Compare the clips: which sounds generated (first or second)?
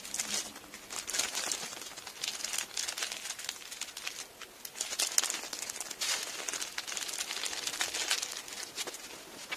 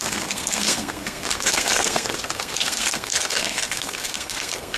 second